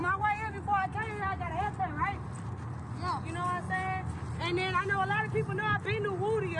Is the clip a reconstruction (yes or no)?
no